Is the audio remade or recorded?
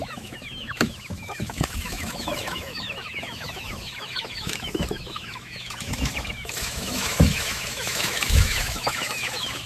remade